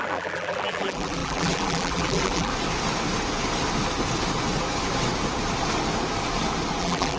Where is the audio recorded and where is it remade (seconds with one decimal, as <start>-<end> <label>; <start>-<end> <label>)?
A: 0.0-2.5 remade; 2.5-6.8 recorded; 6.8-7.2 remade

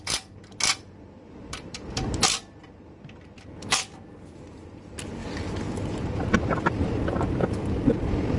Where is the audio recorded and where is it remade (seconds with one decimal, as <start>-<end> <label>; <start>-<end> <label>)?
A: 0.0-0.7 recorded; 0.7-2.4 remade; 2.4-8.4 recorded